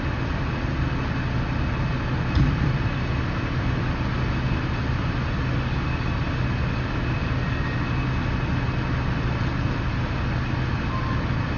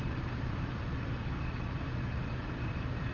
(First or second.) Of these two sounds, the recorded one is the first